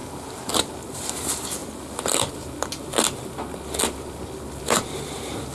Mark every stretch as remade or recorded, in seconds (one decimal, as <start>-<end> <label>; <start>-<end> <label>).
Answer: 0.0-5.5 recorded